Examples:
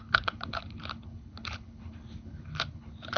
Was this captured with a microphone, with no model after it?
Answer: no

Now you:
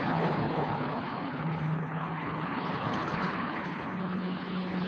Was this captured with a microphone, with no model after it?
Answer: no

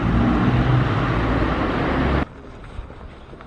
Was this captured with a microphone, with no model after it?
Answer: yes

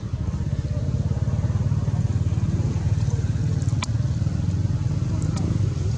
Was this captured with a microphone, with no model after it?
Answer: yes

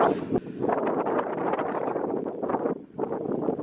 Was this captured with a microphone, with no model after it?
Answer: yes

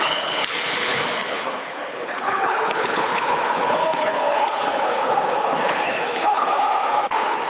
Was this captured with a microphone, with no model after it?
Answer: no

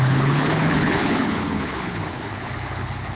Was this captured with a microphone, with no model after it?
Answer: no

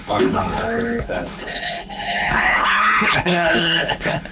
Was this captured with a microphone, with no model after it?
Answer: no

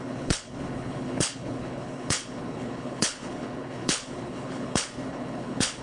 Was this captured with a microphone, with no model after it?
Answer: no